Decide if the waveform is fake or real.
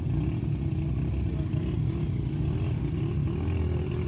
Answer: real